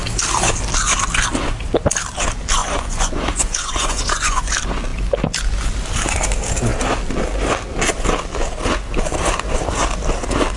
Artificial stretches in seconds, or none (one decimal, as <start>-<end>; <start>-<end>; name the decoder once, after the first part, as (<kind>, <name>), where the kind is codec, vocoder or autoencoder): 2.6-4.5 (vocoder, Vocos)